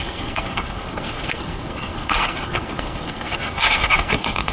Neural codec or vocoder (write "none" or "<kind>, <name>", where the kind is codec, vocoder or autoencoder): codec, SNAC